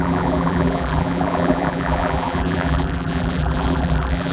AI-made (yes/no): yes